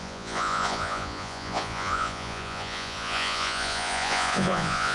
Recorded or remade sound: remade